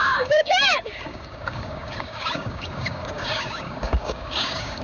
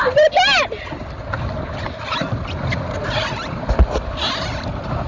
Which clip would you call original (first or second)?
second